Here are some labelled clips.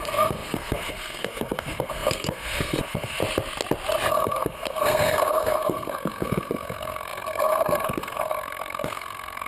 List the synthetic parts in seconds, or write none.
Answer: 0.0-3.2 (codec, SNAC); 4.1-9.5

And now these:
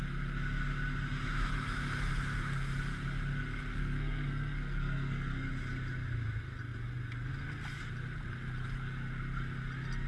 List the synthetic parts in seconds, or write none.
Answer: 3.7-5.5 (codec, SNAC)

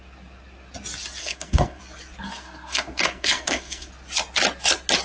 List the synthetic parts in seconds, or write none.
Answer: 1.2-1.8 (codec, SNAC); 2.3-3.9

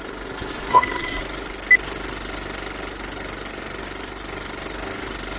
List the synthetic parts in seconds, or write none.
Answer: 0.7-1.2 (codec, SNAC)

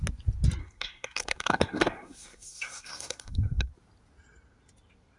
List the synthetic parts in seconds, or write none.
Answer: 0.6-3.7 (codec, SNAC)

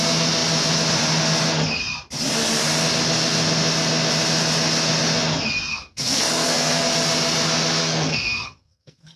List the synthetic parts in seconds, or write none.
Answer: 5.7-6.8 (codec, SNAC); 7.8-9.2